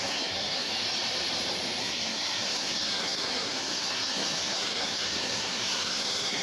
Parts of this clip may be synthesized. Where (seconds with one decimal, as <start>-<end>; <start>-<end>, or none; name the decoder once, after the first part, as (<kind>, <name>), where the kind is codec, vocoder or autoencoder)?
0.0-0.7 (codec, SNAC); 1.8-6.4